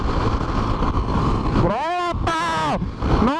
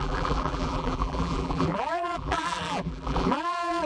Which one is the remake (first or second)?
second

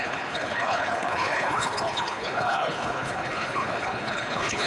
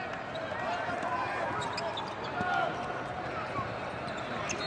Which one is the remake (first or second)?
first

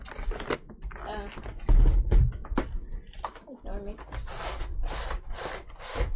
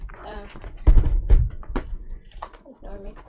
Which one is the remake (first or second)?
second